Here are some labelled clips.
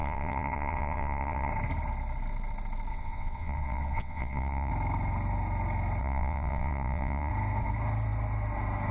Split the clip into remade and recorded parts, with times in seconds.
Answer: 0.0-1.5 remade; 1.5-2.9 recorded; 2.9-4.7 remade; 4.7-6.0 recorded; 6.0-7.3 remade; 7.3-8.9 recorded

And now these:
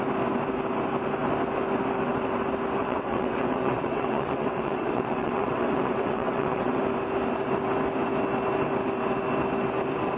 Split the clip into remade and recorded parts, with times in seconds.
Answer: 0.0-2.8 recorded; 2.8-6.8 remade; 6.8-10.2 recorded

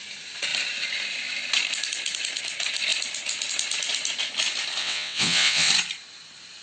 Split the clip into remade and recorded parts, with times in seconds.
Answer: 0.0-4.8 recorded; 4.8-5.7 remade; 5.7-6.6 recorded

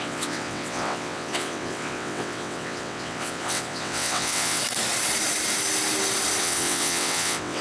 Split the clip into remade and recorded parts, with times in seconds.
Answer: 0.0-4.6 remade; 4.6-6.4 recorded; 6.4-7.6 remade

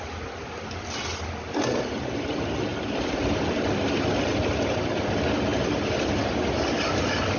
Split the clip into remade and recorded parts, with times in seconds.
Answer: 0.0-7.4 recorded

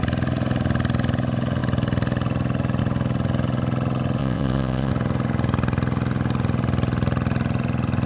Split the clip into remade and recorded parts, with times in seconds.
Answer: 0.0-4.2 recorded; 4.2-4.9 remade; 4.9-8.1 recorded